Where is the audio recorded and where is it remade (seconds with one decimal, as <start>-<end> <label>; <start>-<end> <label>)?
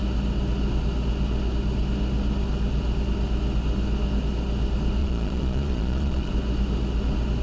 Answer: 0.0-5.0 recorded; 5.0-6.3 remade; 6.3-7.4 recorded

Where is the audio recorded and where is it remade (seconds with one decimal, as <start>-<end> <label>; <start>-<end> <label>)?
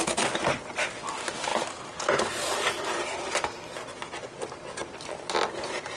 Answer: 0.0-6.0 recorded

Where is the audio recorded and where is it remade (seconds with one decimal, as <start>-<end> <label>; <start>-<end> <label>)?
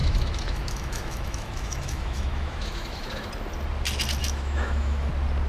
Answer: 0.0-3.3 remade; 3.3-4.2 recorded; 4.2-5.1 remade; 5.1-5.5 recorded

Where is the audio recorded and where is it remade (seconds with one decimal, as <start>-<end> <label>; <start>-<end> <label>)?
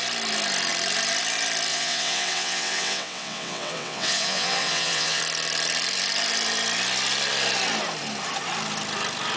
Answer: 0.0-1.7 recorded; 1.7-5.2 remade; 5.2-9.4 recorded